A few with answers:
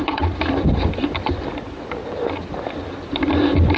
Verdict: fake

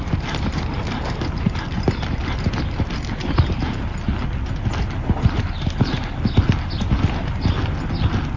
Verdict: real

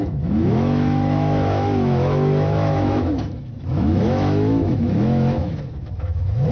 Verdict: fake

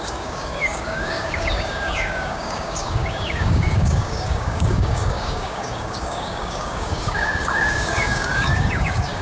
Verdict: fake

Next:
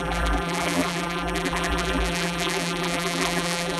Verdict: fake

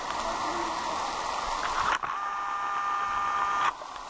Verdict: real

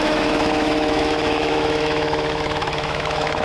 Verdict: fake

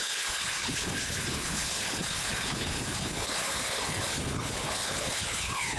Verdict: fake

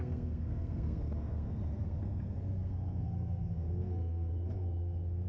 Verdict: fake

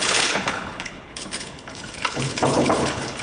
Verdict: fake